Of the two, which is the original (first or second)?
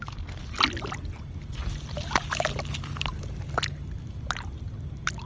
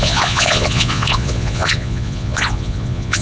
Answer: first